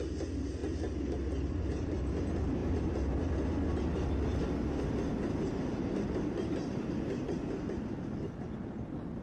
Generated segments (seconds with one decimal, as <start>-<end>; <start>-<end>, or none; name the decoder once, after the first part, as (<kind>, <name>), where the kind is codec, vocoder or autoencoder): none